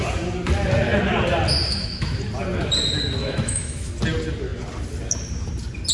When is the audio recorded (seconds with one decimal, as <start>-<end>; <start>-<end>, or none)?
0.0-1.6; 2.2-3.2; 3.9-5.9